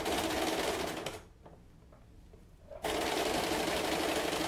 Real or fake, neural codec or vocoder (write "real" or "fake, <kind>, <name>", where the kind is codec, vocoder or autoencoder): real